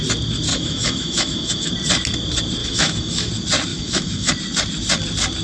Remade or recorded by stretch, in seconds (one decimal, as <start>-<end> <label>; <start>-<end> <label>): 0.0-0.5 recorded; 0.5-1.7 remade; 1.7-2.6 recorded; 2.6-3.3 remade; 3.3-3.7 recorded; 3.7-4.3 remade; 4.3-5.4 recorded